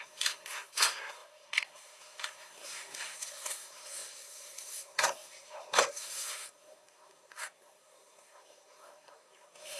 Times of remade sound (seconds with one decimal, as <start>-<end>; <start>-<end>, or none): 0.0-9.8